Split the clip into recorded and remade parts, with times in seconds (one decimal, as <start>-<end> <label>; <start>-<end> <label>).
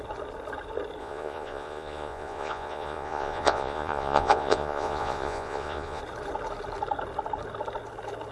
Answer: 0.0-1.0 recorded; 1.0-6.0 remade; 6.0-8.3 recorded